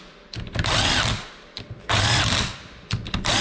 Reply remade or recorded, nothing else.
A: recorded